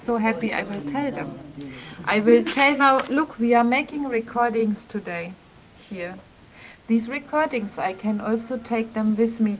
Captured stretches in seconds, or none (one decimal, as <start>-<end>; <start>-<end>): 0.6-2.3; 3.3-9.6